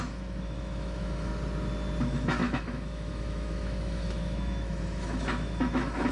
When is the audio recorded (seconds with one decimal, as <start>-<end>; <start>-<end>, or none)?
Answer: 1.3-2.0